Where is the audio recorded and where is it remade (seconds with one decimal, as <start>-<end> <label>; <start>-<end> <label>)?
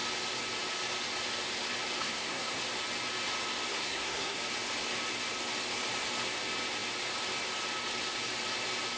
0.0-2.0 recorded; 2.0-2.6 remade; 2.6-3.7 recorded; 3.7-4.4 remade; 4.4-9.0 recorded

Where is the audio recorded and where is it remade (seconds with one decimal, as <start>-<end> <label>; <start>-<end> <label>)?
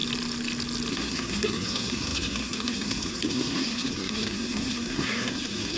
0.0-0.9 recorded; 0.9-5.8 remade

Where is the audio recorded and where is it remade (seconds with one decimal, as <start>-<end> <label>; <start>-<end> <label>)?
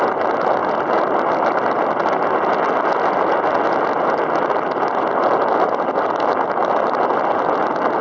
0.0-8.0 recorded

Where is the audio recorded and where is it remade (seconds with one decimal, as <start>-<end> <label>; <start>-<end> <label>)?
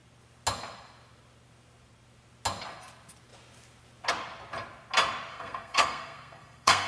0.0-5.3 recorded; 5.3-6.9 remade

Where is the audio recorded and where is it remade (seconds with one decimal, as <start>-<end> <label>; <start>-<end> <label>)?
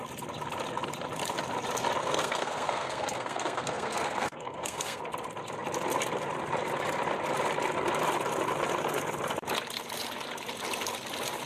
0.0-2.0 recorded; 2.0-5.0 remade; 5.0-11.5 recorded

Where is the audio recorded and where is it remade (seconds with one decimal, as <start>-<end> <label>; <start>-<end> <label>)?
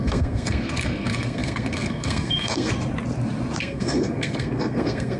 0.0-2.7 remade; 2.7-3.6 recorded; 3.6-5.2 remade